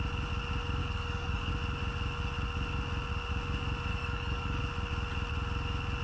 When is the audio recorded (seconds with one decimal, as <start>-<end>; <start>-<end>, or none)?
0.0-0.8; 1.5-3.9; 4.6-6.0